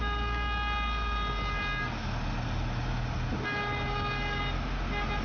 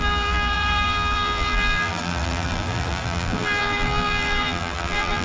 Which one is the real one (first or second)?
first